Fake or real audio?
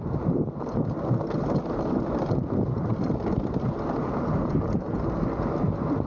real